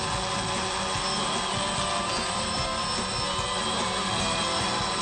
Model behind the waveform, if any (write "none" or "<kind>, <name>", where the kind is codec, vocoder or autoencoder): none